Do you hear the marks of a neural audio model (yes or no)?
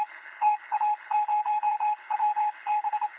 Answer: yes